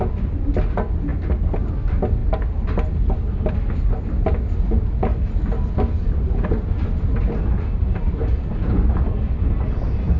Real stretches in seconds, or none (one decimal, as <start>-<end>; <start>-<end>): 0.0-10.2